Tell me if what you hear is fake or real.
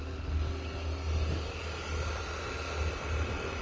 real